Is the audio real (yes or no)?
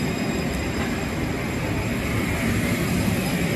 no